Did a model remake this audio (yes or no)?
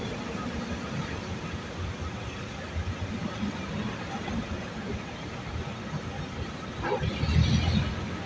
no